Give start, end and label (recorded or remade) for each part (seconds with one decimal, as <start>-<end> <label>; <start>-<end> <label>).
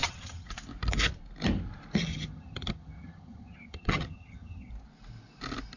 0.0-0.5 remade; 0.5-2.1 recorded; 2.1-4.7 remade; 4.7-5.8 recorded